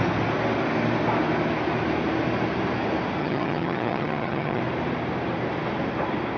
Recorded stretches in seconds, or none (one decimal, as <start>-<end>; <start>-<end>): 0.0-3.2; 4.6-6.4